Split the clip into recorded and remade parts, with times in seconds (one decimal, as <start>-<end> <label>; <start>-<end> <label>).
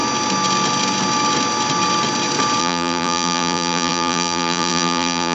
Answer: 0.0-2.6 recorded; 2.6-5.3 remade